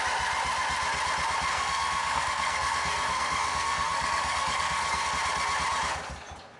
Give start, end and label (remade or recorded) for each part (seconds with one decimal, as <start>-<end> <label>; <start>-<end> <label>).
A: 0.0-1.5 recorded; 1.5-5.1 remade; 5.1-6.6 recorded